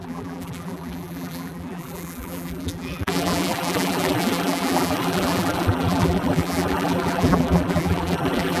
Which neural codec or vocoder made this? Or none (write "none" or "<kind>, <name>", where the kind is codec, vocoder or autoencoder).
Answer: vocoder, BigVGAN v2